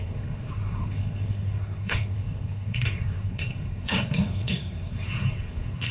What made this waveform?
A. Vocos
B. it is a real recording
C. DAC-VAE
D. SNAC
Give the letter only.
D